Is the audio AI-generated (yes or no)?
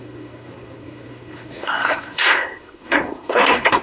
yes